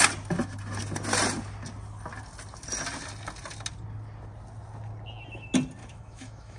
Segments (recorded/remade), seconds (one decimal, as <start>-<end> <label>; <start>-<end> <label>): 0.0-5.8 recorded; 5.8-6.6 remade